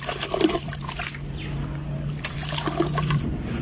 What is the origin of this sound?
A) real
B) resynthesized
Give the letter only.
B